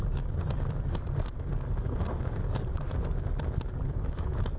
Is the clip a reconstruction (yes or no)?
yes